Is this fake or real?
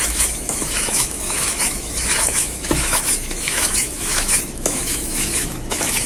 fake